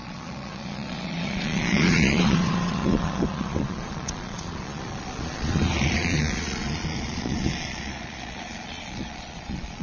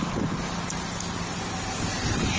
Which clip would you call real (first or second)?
second